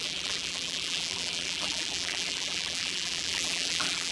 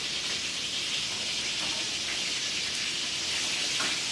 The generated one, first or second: first